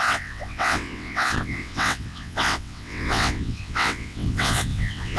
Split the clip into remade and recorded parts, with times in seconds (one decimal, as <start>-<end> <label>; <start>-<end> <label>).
0.0-5.2 remade